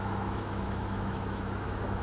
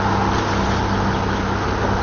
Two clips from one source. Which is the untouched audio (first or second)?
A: second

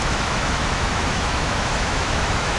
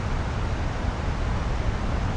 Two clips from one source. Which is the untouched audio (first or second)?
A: second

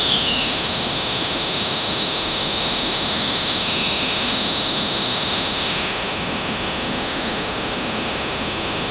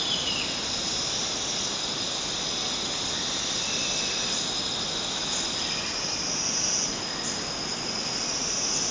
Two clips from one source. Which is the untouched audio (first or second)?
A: second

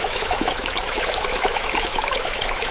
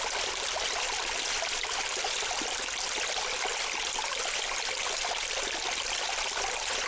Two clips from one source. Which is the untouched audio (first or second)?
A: second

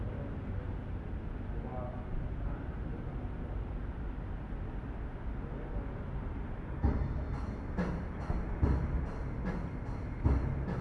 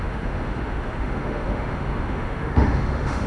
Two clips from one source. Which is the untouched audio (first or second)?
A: first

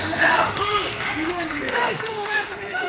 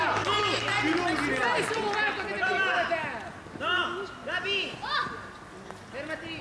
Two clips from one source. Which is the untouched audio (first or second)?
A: second